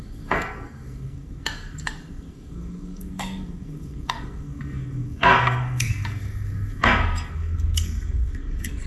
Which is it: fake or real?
fake